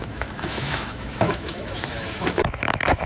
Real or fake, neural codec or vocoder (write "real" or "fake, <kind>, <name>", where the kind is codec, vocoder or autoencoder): fake, autoencoder, DAC-VAE